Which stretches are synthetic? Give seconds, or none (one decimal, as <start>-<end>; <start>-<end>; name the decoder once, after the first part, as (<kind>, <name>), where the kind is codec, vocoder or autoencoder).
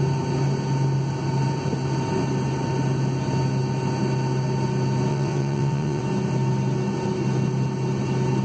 5.1-6.0 (vocoder, WaveNeXt)